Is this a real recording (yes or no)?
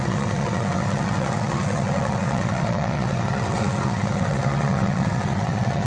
no